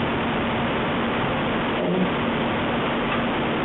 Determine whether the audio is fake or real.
real